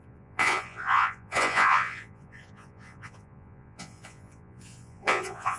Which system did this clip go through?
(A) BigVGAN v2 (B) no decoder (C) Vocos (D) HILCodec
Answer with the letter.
C